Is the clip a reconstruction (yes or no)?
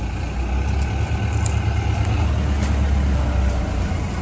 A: no